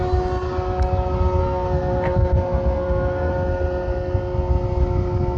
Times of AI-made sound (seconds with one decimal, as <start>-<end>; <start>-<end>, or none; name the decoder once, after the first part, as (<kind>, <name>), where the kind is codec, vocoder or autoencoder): 1.4-3.3 (codec, SNAC)

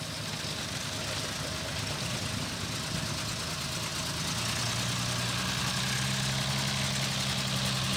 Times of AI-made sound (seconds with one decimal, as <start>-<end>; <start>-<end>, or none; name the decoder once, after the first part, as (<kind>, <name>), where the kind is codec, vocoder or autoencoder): none

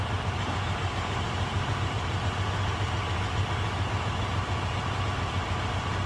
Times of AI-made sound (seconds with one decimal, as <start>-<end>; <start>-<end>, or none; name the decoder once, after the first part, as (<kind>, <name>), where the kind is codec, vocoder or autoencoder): 1.5-2.2 (vocoder, BigVGAN v2)

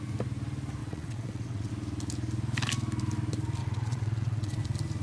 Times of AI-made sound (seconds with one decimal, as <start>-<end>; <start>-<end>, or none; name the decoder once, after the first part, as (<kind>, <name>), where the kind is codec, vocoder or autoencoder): 0.8-1.7 (vocoder, WaveNeXt); 3.6-4.6

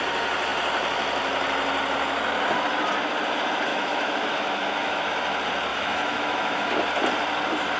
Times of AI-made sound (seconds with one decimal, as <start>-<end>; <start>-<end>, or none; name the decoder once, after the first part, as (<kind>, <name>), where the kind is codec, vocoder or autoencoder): 3.7-5.1 (autoencoder, DAC-VAE); 5.7-6.7